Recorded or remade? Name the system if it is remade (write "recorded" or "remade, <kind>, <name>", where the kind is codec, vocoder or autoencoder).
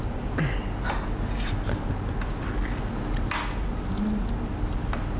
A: recorded